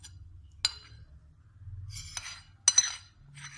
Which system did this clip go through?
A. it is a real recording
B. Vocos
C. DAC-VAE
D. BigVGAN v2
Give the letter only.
A